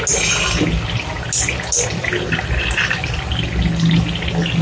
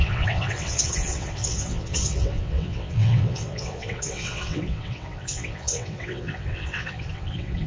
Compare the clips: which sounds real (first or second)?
first